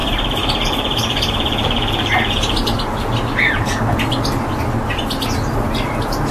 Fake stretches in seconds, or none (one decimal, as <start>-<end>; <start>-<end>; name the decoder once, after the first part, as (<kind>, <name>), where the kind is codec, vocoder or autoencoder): 0.0-3.8 (vocoder, BigVGAN v2)